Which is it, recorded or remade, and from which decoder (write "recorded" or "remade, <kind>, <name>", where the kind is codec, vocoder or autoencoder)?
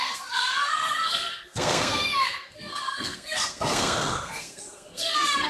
remade, codec, SNAC